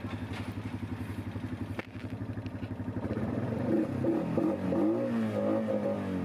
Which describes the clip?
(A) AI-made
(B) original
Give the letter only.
B